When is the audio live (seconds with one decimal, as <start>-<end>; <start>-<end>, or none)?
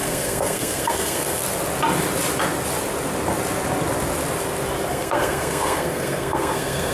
1.4-4.9